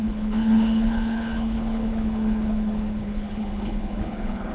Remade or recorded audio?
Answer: remade